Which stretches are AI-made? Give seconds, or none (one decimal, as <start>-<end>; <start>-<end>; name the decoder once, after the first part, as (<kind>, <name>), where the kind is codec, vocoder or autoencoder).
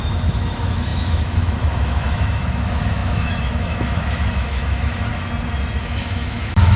0.0-5.1 (autoencoder, DAC-VAE); 5.8-6.8